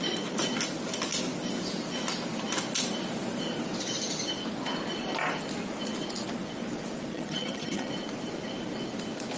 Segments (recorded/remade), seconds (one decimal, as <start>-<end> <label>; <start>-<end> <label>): 0.0-7.1 recorded; 7.1-7.9 remade; 7.9-9.4 recorded